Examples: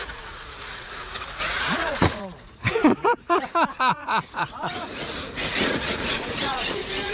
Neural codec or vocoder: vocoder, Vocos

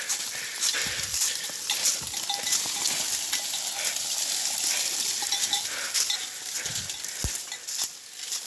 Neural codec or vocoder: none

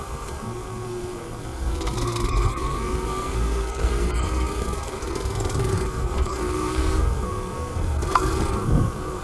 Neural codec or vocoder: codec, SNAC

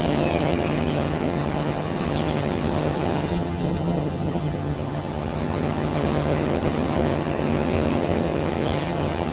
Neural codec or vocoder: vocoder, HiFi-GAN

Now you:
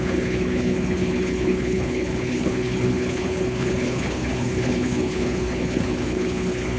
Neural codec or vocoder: codec, HILCodec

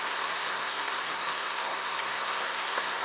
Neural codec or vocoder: codec, SNAC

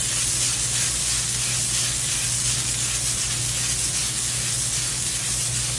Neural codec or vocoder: none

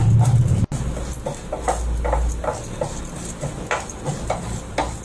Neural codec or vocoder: none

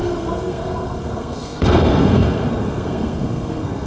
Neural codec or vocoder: codec, SNAC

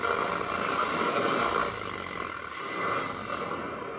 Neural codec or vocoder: none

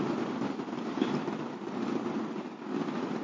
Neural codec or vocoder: none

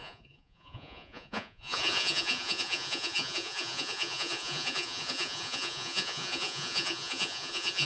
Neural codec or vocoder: vocoder, Vocos